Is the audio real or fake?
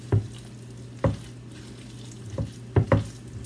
real